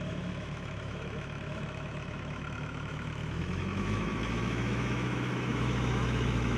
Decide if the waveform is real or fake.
fake